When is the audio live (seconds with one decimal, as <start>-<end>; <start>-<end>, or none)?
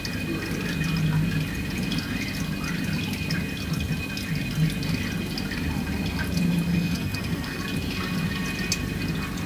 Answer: 0.0-6.7; 7.6-9.5